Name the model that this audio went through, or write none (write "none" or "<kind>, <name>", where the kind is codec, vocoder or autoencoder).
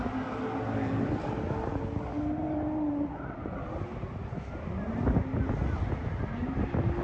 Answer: none